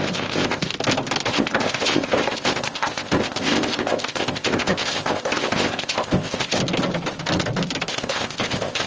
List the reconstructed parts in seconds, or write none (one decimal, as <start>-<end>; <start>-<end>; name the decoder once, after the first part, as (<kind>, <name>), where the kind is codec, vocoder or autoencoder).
0.0-0.7 (codec, ZipCodec); 1.3-6.6; 7.9-8.9